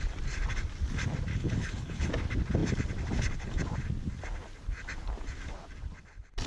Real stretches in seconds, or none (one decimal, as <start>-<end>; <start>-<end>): 0.0-1.3; 2.1-6.5